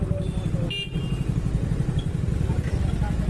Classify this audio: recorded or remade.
recorded